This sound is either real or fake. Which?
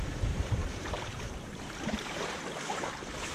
fake